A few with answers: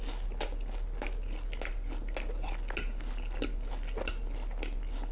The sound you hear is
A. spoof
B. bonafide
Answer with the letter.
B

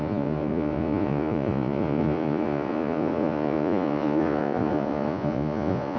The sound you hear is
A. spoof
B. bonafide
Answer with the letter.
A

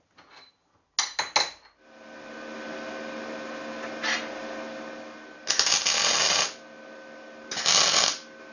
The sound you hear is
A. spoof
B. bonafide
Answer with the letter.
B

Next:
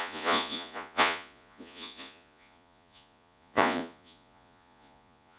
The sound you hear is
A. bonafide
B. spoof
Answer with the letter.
B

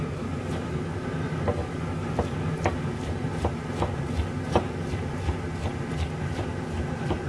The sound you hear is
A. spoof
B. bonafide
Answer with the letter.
B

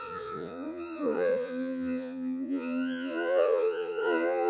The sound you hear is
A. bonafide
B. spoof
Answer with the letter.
B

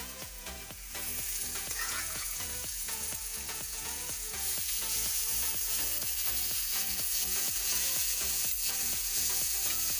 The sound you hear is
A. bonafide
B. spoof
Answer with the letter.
B